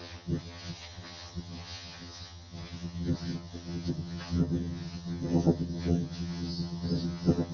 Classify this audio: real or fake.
fake